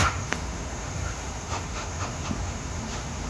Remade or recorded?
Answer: remade